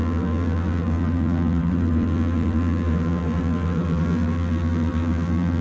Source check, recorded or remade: remade